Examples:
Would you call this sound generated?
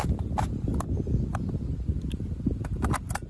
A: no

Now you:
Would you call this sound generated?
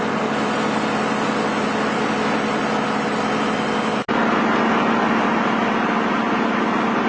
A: no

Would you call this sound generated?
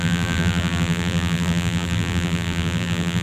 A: yes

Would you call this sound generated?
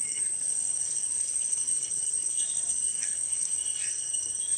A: yes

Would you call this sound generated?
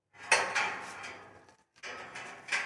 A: no